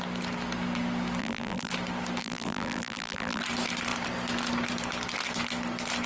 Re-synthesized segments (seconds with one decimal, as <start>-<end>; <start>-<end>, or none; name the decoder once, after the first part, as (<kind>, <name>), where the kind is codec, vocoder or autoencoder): 1.2-1.7 (vocoder, BigVGAN v2); 2.2-3.4